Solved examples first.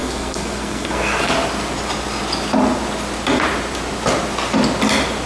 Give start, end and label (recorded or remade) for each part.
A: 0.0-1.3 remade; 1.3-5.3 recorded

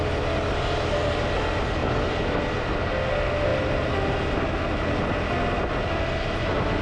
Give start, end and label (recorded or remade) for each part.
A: 0.0-6.8 recorded

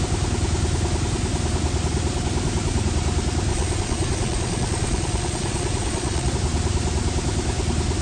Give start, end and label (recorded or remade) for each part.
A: 0.0-3.5 recorded; 3.5-6.3 remade; 6.3-8.0 recorded

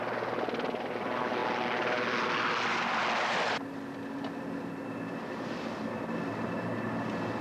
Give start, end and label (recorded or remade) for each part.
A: 0.0-7.4 recorded

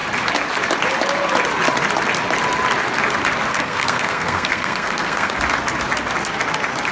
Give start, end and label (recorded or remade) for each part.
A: 0.0-3.5 recorded; 3.5-5.3 remade; 5.3-6.9 recorded

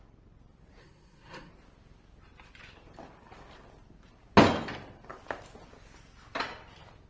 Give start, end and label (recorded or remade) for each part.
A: 0.0-0.8 recorded; 0.8-1.5 remade; 1.5-7.1 recorded

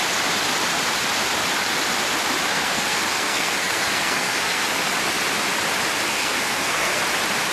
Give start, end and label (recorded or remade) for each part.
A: 0.0-2.5 recorded; 2.5-4.9 remade; 4.9-6.1 recorded; 6.1-7.0 remade; 7.0-7.5 recorded

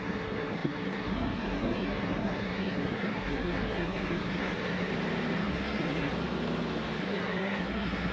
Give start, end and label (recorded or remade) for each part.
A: 0.0-4.9 remade; 4.9-5.4 recorded; 5.4-6.1 remade; 6.1-7.0 recorded; 7.0-8.1 remade